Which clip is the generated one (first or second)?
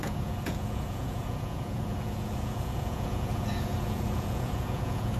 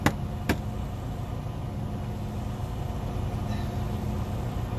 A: first